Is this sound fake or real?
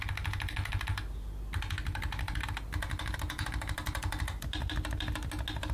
real